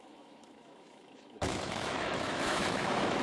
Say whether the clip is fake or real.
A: fake